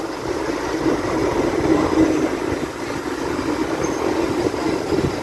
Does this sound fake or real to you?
real